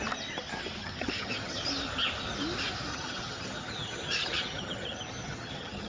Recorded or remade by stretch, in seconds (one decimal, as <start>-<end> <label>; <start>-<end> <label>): 0.0-0.8 recorded; 0.8-1.7 remade; 1.7-2.9 recorded; 2.9-5.9 remade